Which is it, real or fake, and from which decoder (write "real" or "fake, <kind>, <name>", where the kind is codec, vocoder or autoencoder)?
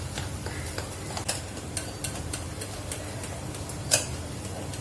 real